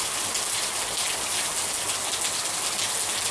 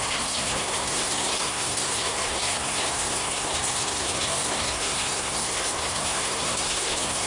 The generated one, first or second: second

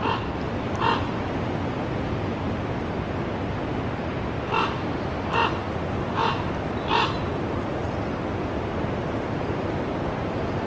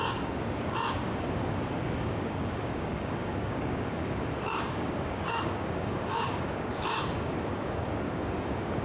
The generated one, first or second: second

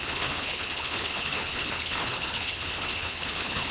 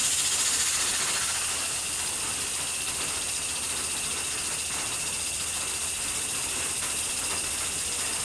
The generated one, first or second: first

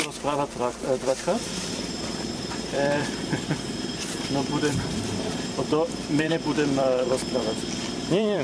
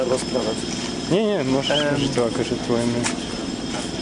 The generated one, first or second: first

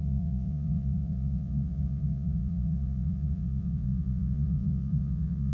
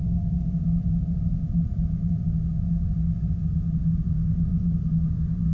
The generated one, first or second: first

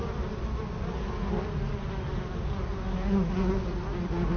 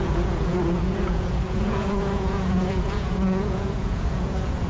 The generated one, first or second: second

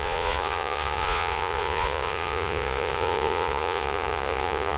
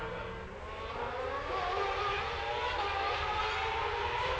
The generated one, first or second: first